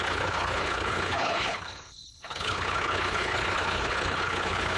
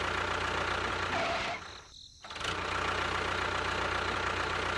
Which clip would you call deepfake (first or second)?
first